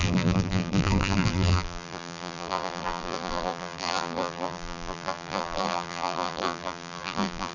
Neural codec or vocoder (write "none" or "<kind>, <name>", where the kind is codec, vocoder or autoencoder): vocoder, BigVGAN v2